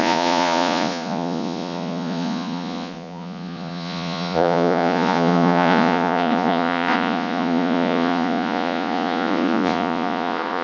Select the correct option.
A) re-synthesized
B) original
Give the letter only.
A